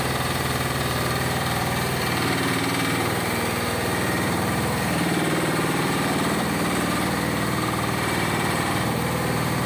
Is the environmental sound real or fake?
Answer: fake